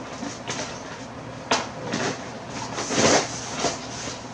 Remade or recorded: recorded